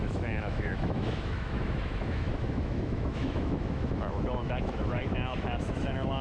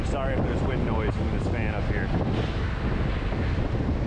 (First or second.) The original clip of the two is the second